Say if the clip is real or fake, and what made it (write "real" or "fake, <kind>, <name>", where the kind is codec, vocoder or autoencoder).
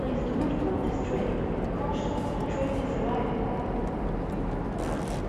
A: real